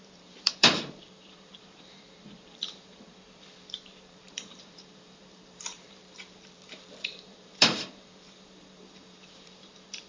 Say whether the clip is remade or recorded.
remade